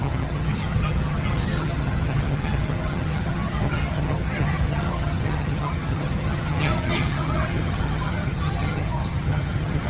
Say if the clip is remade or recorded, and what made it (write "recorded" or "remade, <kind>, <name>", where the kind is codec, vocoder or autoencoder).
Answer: remade, vocoder, HiFi-GAN